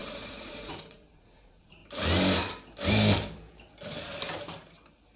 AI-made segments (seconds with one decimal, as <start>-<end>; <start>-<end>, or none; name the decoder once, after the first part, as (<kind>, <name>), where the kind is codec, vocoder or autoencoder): 0.0-1.8 (vocoder, Vocos)